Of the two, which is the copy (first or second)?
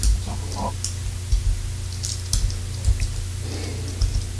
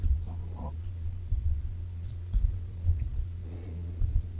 second